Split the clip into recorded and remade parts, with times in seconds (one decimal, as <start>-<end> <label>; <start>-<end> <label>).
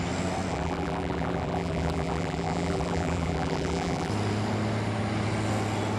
0.0-0.5 recorded; 0.5-4.1 remade; 4.1-6.0 recorded